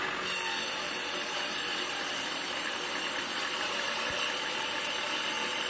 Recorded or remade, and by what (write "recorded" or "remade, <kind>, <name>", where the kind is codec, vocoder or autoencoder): recorded